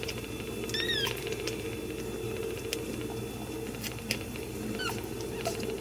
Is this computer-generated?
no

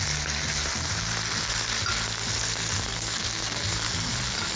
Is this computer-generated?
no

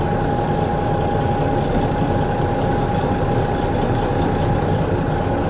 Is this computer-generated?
no